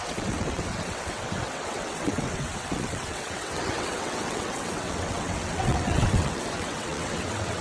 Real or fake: fake